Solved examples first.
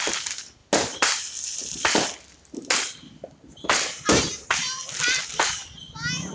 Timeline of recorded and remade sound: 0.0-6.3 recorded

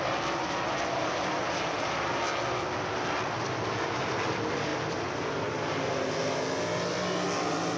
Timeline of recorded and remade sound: 0.0-7.8 recorded

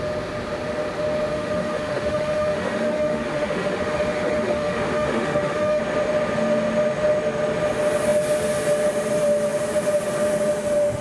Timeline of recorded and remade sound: 0.0-1.3 recorded; 1.3-5.8 remade; 5.8-11.0 recorded